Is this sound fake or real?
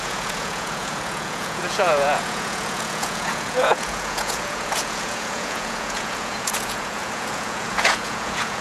fake